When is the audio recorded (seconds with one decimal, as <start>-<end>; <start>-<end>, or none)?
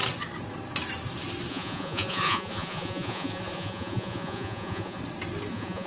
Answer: 0.0-1.5; 5.0-5.5